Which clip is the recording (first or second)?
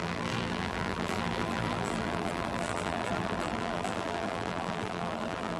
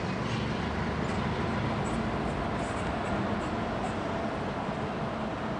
second